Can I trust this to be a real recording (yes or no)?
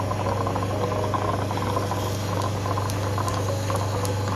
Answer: yes